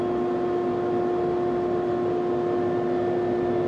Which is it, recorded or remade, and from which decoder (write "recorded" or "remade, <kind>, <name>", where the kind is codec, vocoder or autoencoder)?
recorded